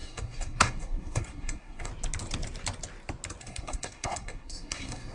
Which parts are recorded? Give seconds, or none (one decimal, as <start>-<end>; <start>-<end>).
1.9-3.4